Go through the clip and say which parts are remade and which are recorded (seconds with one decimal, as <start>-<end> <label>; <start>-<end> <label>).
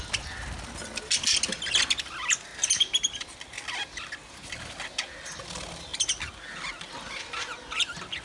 0.0-8.2 recorded